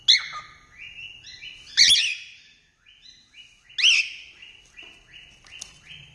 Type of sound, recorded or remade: recorded